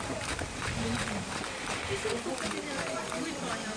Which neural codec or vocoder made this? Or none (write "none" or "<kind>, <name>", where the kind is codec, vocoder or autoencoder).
none